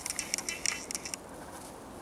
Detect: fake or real real